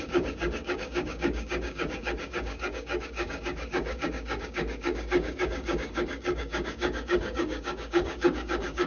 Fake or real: fake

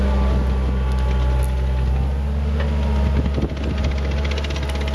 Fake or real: real